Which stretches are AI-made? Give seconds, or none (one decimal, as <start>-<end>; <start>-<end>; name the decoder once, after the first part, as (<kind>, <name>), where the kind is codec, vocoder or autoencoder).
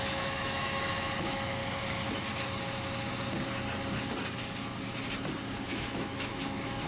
0.0-1.6 (autoencoder, DAC-VAE); 5.7-6.9